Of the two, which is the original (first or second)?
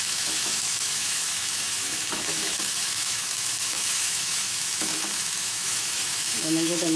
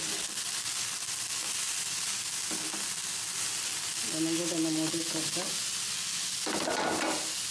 second